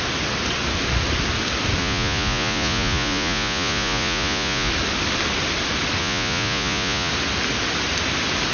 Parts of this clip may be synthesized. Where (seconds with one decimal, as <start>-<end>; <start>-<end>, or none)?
1.8-4.7; 6.0-7.1